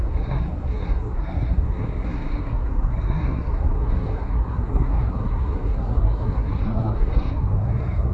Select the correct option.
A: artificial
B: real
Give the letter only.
A